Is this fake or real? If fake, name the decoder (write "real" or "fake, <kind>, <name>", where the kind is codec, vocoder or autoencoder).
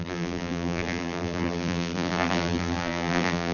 fake, vocoder, BigVGAN v2